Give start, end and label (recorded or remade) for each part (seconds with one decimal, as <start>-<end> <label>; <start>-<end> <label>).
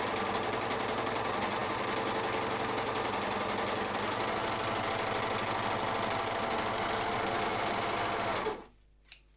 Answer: 0.0-9.4 recorded